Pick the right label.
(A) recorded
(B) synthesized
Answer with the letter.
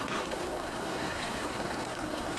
B